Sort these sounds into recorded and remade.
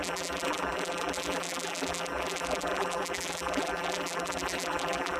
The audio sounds remade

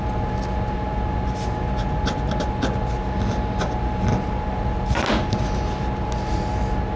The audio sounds recorded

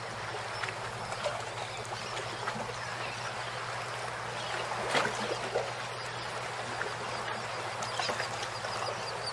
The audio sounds recorded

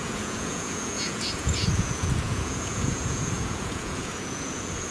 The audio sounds remade